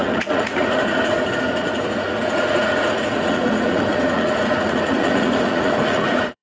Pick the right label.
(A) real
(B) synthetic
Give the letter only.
B